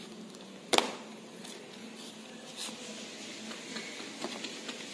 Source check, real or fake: real